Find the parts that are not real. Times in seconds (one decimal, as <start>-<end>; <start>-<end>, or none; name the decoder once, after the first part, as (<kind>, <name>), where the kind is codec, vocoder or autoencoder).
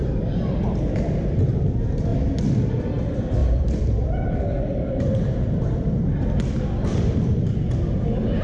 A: 3.4-6.7 (vocoder, BigVGAN v2)